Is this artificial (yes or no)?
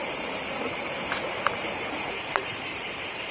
yes